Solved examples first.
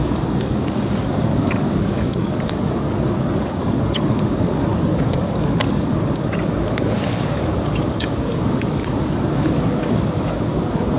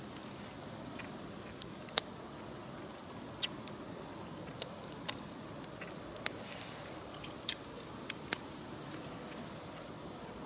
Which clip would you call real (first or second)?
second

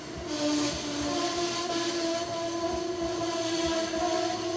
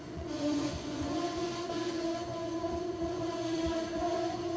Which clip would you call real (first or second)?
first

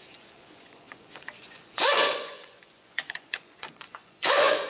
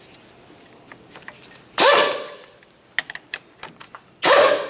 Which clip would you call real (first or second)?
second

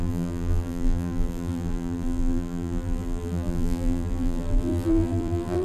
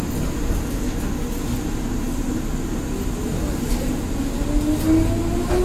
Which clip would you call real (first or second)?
second